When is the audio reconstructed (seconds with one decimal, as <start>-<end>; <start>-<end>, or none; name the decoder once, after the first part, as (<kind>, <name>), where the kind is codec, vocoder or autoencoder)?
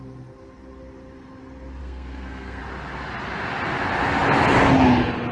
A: 1.8-2.6 (codec, SNAC)